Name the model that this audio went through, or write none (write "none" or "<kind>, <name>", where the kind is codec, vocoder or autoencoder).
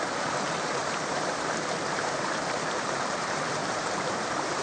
vocoder, BigVGAN v2